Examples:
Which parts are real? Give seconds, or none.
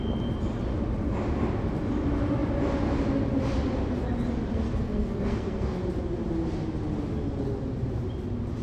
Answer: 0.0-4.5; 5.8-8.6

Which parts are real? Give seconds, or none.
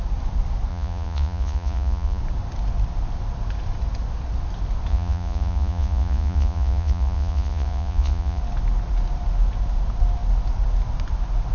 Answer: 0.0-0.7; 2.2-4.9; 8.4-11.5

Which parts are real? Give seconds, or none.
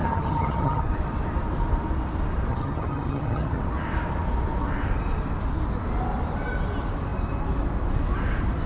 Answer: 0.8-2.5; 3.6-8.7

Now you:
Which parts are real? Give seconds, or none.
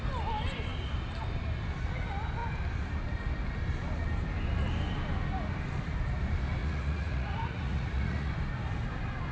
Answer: 0.0-6.6; 8.3-9.3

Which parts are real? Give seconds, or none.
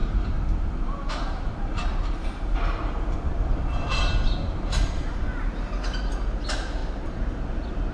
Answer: 4.0-6.8; 7.4-7.9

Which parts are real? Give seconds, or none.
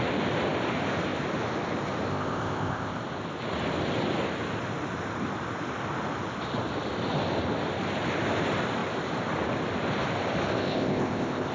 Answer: 0.0-2.1; 3.0-10.6